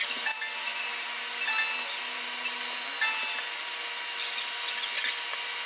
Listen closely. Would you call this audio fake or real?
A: real